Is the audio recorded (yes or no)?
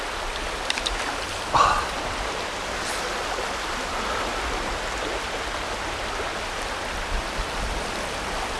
no